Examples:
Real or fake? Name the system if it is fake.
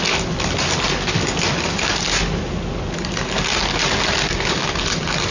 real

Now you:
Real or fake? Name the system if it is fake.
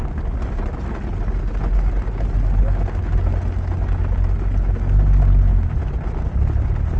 real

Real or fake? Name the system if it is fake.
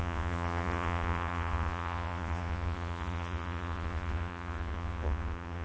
fake, vocoder, Vocos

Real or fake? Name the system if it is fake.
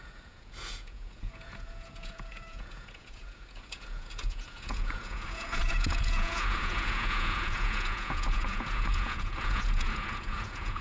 fake, vocoder, Vocos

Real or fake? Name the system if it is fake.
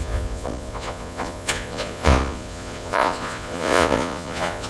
fake, vocoder, Vocos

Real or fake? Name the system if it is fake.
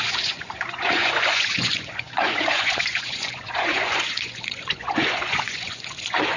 fake, vocoder, Vocos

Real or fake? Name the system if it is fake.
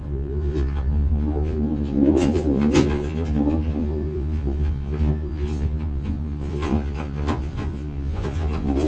fake, vocoder, Vocos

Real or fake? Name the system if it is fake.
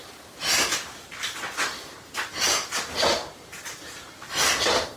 real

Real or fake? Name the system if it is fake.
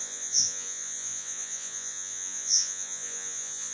fake, vocoder, Vocos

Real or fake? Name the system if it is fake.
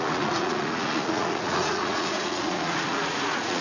fake, vocoder, Vocos